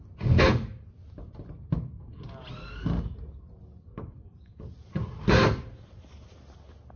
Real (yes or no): yes